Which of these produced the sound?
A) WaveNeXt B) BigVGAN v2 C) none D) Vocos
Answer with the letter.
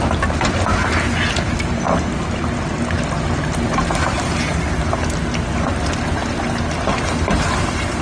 C